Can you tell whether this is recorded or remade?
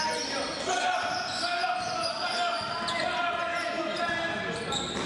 recorded